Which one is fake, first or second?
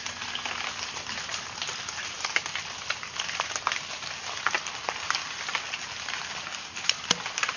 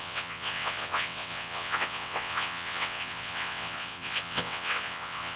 second